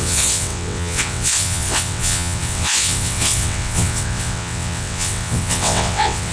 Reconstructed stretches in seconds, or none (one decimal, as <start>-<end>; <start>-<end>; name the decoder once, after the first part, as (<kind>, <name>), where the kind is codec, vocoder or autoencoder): 0.0-6.3 (vocoder, WaveNeXt)